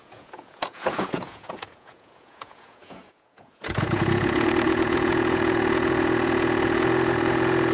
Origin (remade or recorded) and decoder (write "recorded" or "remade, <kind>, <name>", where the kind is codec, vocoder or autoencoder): remade, vocoder, Vocos